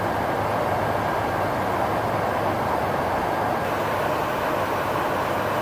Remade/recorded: recorded